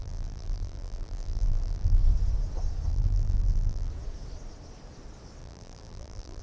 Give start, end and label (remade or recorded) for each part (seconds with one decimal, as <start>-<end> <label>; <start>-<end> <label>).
0.0-2.0 remade; 2.0-2.9 recorded; 2.9-3.9 remade; 3.9-5.4 recorded; 5.4-6.4 remade